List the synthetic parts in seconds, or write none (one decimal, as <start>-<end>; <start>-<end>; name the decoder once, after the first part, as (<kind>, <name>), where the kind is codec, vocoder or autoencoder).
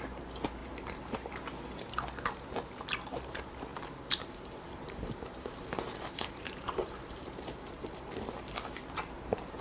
0.6-1.3 (vocoder, BigVGAN v2); 3.7-8.7